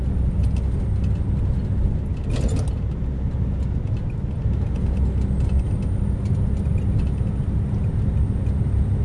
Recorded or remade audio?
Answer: recorded